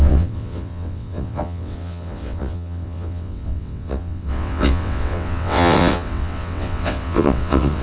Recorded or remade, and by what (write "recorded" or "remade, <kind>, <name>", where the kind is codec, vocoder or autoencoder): remade, vocoder, WaveNeXt